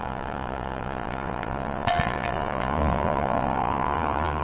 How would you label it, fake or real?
fake